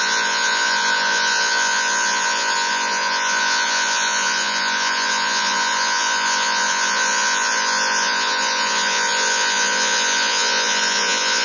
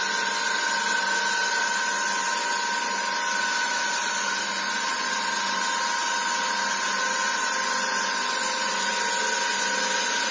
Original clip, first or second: second